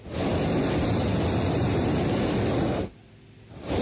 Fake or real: real